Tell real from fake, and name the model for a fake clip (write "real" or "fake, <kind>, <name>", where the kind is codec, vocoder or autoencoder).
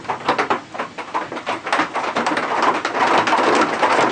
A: real